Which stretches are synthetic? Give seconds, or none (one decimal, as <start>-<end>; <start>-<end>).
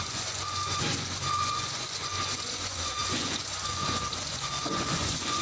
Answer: 0.0-5.4